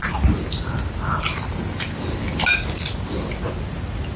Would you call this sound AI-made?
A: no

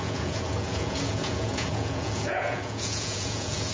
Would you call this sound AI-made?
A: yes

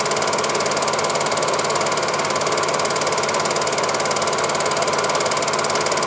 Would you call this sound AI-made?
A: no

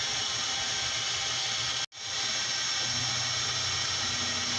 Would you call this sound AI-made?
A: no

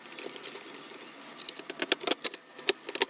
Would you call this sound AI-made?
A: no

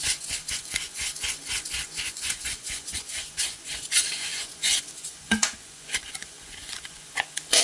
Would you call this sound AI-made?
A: yes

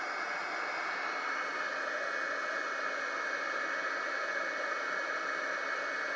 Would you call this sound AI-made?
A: no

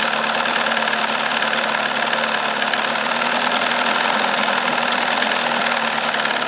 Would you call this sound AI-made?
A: no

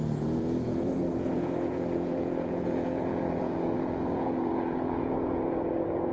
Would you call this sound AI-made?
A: yes